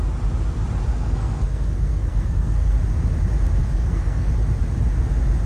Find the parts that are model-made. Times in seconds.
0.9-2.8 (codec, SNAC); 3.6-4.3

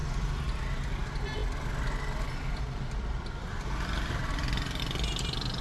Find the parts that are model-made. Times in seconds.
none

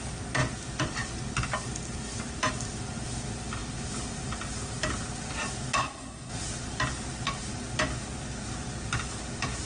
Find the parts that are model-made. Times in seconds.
5.8-6.3 (codec, SNAC)

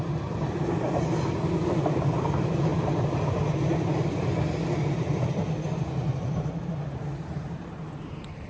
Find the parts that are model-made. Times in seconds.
0.0-2.7 (vocoder, BigVGAN v2); 6.3-8.5

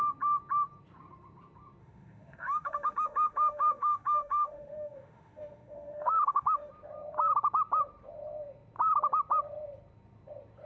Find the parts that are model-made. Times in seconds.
1.8-6.7 (autoencoder, DAC-VAE)

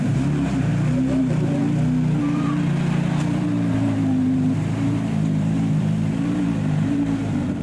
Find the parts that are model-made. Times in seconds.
0.0-0.7 (vocoder, BigVGAN v2); 1.2-1.6; 2.2-7.6